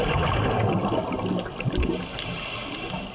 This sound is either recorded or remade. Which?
recorded